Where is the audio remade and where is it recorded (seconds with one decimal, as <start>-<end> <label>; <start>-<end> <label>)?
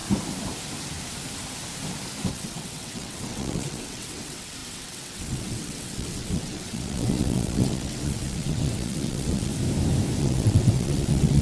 0.0-2.3 recorded; 2.3-9.5 remade; 9.5-10.2 recorded; 10.2-11.4 remade